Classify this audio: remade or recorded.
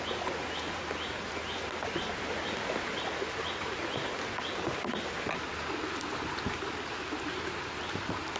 recorded